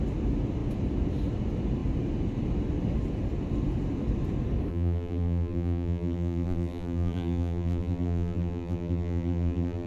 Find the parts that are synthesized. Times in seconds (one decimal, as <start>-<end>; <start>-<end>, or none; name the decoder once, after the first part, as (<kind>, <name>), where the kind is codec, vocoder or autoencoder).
4.7-9.9 (vocoder, BigVGAN v2)